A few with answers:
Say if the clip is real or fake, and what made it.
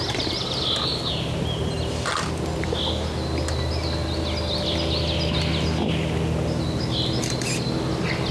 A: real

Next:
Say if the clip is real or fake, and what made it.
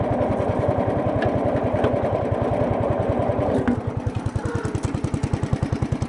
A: real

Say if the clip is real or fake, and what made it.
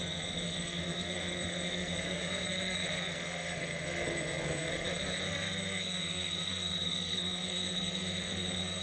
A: fake, codec, SNAC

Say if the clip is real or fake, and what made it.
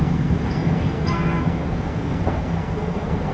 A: fake, codec, SNAC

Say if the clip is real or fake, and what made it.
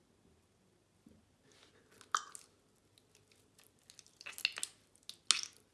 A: real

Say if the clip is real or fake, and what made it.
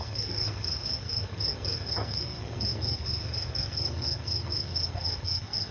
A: fake, codec, SNAC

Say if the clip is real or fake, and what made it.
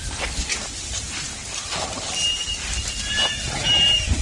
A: real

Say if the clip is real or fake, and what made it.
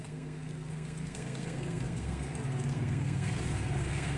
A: fake, codec, SNAC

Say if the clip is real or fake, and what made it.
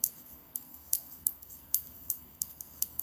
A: fake, codec, SNAC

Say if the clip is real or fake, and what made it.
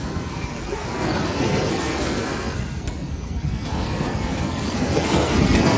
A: fake, codec, SNAC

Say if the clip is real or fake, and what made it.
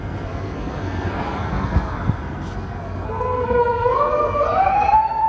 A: fake, codec, SNAC